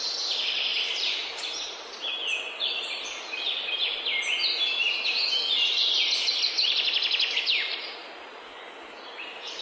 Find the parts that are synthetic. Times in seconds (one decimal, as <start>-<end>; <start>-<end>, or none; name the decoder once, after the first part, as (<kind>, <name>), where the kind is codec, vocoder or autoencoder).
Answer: none